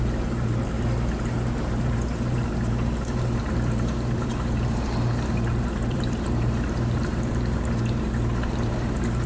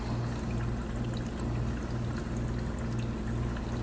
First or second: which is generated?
first